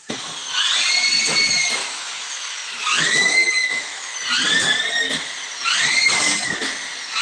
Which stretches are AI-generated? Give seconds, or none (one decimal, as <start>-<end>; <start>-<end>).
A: 1.8-4.1